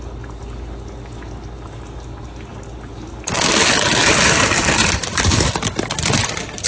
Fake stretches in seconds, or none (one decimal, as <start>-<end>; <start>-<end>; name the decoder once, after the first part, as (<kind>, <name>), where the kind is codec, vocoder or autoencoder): none